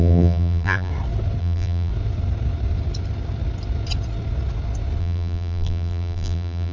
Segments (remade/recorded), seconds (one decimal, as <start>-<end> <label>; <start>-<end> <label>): 0.0-0.9 remade; 0.9-1.4 recorded; 1.4-1.9 remade; 1.9-5.0 recorded; 5.0-6.7 remade